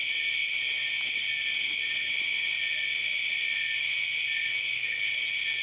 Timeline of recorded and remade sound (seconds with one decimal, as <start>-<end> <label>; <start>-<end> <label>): 0.0-4.5 recorded; 4.5-5.1 remade; 5.1-5.6 recorded